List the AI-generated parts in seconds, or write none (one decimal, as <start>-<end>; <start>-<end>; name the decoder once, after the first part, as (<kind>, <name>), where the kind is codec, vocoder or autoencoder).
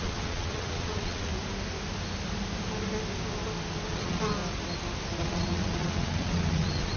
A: 0.0-1.3 (vocoder, WaveNeXt); 3.9-4.4; 5.2-7.0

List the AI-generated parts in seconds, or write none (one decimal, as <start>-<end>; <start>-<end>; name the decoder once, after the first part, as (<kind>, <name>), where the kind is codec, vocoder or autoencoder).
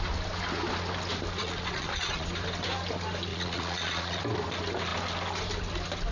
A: 1.4-2.3 (vocoder, Vocos); 3.3-4.2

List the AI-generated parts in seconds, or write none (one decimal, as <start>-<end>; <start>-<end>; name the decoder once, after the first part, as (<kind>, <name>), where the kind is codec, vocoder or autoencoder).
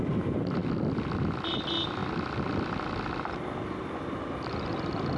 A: none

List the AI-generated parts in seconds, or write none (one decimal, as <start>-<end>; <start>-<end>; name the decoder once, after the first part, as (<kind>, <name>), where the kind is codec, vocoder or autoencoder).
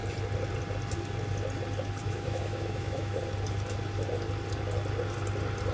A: 2.0-3.2 (autoencoder, DAC-VAE)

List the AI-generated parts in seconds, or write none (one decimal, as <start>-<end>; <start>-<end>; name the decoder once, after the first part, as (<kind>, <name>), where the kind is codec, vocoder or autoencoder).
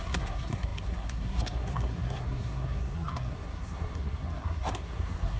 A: 0.0-5.4 (codec, SNAC)